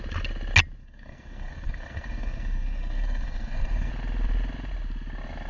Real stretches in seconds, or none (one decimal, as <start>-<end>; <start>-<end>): 0.0-0.8; 3.9-5.5